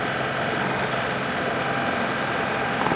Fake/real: real